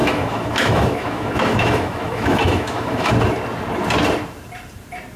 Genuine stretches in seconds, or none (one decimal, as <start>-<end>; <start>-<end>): 3.1-5.2